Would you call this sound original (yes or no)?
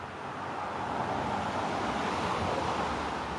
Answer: yes